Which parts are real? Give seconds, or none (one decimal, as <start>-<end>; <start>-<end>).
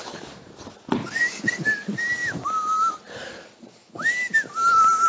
0.0-5.1